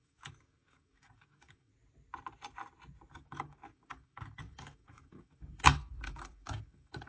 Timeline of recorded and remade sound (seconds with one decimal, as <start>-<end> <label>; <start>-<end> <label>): 0.0-1.7 remade; 1.7-3.1 recorded; 3.1-7.1 remade